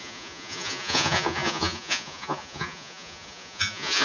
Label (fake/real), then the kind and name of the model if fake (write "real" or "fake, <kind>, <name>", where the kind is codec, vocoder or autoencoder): fake, vocoder, Vocos